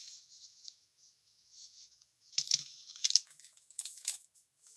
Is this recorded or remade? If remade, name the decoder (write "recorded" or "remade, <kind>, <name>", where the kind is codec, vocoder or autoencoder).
remade, autoencoder, DAC-VAE